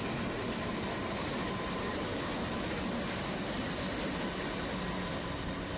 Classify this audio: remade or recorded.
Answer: recorded